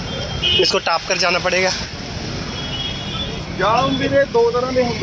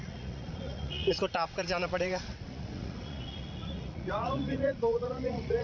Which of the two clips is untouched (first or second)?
first